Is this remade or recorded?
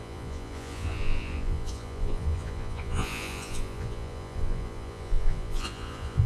remade